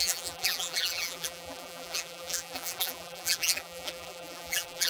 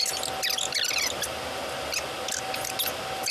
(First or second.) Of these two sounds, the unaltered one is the second